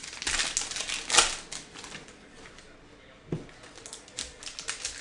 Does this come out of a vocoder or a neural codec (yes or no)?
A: no